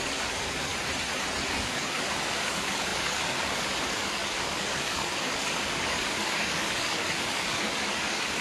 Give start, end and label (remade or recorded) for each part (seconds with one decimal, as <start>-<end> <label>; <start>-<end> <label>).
0.0-0.7 remade; 0.7-1.5 recorded; 1.5-8.4 remade